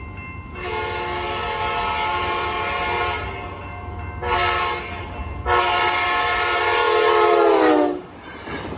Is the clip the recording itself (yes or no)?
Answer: yes